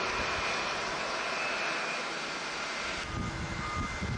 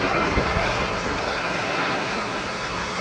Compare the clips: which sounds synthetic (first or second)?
second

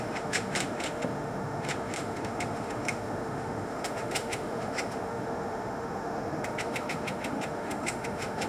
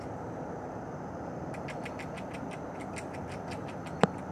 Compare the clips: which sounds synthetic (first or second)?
first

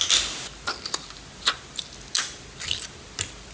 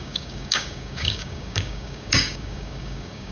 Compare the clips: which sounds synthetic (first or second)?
second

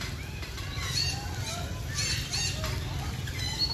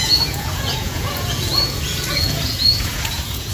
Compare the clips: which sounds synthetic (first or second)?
second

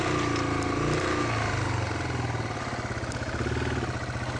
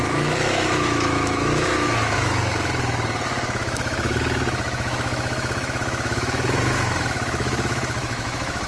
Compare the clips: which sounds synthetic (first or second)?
second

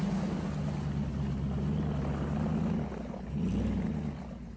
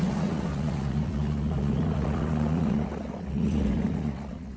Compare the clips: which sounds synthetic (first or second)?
second